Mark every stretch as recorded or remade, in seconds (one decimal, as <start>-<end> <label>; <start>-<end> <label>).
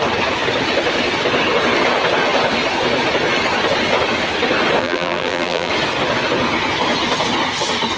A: 0.0-4.8 recorded; 4.8-5.7 remade; 5.7-8.0 recorded